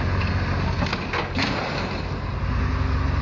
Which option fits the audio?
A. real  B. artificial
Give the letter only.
A